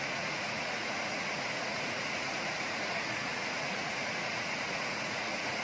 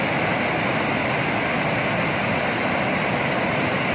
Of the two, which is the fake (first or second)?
first